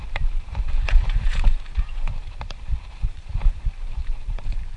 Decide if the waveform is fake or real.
fake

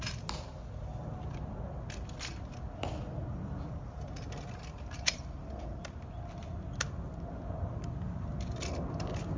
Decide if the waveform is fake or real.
real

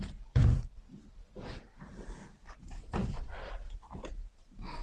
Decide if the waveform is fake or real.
fake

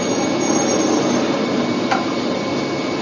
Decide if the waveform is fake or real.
fake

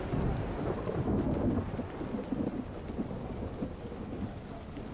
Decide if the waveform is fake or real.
real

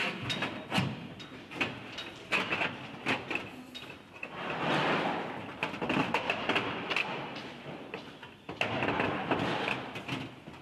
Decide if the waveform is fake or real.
real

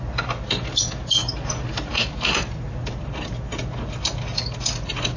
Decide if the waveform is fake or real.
real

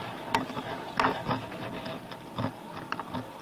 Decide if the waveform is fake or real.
real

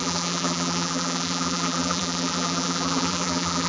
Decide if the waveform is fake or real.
fake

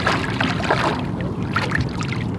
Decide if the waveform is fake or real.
real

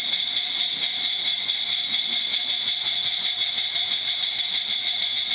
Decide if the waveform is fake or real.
real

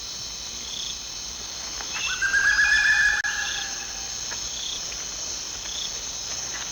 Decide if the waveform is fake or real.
real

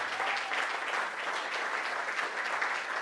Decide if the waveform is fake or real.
real